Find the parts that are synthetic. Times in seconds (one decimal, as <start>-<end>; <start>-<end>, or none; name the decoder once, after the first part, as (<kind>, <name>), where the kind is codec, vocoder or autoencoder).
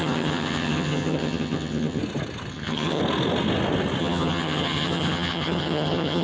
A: 0.0-2.0 (vocoder, HiFi-GAN); 2.5-3.0; 4.0-6.2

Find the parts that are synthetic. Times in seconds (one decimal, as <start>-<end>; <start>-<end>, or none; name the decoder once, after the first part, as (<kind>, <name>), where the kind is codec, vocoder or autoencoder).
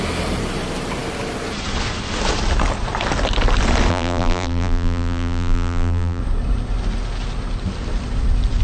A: 3.9-6.2 (vocoder, BigVGAN v2)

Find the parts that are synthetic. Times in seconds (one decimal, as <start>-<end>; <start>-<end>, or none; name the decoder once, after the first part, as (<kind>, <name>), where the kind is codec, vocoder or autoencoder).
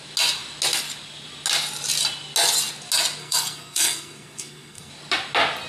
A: 3.2-4.9 (codec, SNAC)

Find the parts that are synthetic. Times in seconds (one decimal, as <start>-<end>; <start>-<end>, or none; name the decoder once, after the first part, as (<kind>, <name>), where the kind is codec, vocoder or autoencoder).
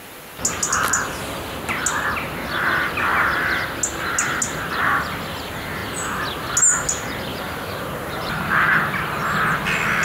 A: 7.3-8.3 (vocoder, BigVGAN v2)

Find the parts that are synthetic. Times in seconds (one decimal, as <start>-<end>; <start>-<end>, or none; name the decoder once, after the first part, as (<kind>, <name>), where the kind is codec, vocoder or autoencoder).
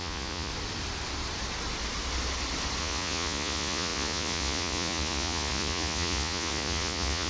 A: 0.0-0.5 (vocoder, Vocos); 2.8-7.3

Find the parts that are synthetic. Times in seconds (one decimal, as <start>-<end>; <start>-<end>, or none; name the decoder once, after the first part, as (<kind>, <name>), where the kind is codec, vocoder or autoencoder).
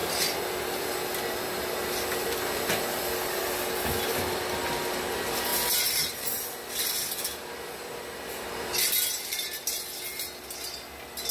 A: none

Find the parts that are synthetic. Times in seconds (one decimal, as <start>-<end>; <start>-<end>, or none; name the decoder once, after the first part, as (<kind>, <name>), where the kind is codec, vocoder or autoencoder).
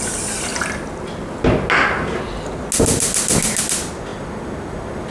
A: none